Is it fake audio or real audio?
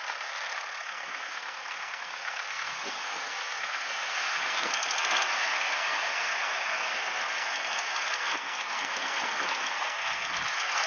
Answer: fake